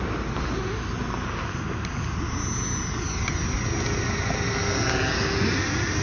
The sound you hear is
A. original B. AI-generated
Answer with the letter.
A